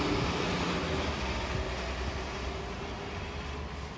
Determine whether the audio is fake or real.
real